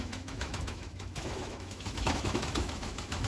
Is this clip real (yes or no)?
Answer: no